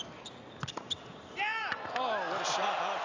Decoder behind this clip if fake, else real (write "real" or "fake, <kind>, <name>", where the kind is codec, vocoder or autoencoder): real